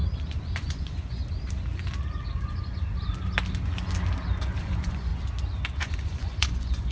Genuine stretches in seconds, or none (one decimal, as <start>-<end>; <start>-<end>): 0.0-0.6; 1.2-4.6; 5.1-5.8